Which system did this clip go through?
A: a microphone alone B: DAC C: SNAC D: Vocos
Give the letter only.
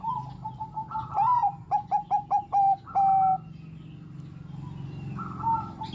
A